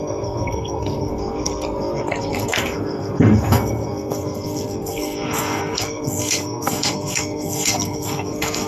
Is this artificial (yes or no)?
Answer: yes